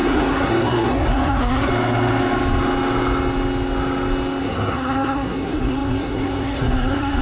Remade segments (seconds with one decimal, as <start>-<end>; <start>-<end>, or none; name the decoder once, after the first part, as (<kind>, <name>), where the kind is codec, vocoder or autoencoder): 0.0-1.7 (codec, SNAC); 4.4-7.2